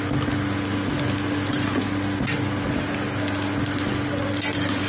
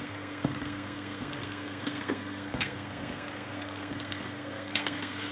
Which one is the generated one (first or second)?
second